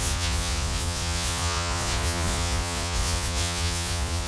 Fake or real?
fake